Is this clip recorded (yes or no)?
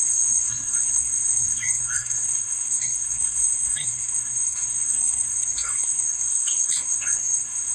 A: no